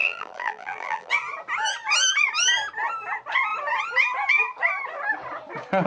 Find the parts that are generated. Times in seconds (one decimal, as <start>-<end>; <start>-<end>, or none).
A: 0.0-1.1